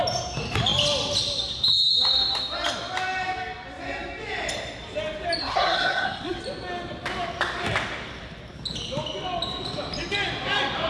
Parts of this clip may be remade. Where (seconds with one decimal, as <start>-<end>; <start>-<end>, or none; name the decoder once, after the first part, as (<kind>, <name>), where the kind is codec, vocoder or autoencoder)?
5.4-6.4 (codec, SNAC)